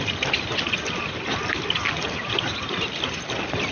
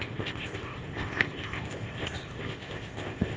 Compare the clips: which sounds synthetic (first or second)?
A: second